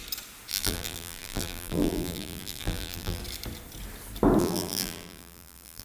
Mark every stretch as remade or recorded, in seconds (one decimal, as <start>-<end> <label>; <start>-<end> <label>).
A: 0.0-0.5 recorded; 0.5-3.2 remade; 3.2-4.4 recorded; 4.4-5.8 remade